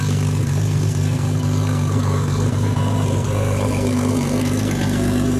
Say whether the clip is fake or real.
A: fake